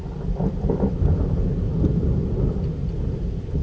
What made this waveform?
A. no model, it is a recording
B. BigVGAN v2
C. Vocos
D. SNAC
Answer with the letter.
B